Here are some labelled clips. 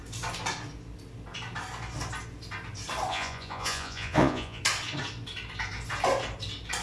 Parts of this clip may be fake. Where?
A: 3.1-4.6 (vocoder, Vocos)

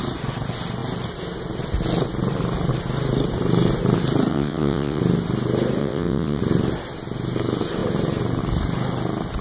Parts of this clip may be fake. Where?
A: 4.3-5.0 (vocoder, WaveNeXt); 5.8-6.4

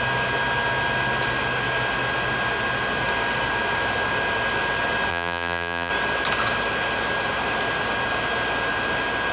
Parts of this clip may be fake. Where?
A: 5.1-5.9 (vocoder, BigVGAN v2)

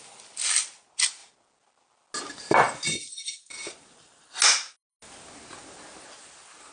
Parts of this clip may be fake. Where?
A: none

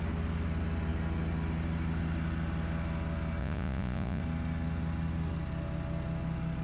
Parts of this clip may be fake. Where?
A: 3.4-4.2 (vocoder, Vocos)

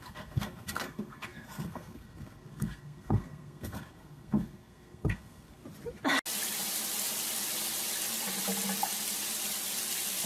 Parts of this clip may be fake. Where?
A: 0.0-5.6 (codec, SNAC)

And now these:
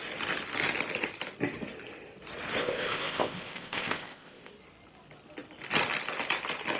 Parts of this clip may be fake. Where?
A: 2.6-4.5 (codec, ZipCodec)

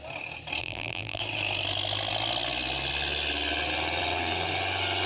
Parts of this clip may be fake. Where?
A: 0.6-1.2 (vocoder, BigVGAN v2)